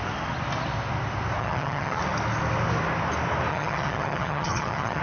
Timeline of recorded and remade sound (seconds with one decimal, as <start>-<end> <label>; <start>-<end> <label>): 0.0-1.4 recorded; 1.4-2.0 remade; 2.0-3.5 recorded; 3.5-5.0 remade